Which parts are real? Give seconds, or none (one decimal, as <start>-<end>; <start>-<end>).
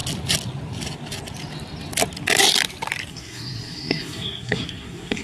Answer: 0.0-3.1